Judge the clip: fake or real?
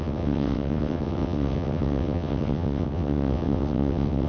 fake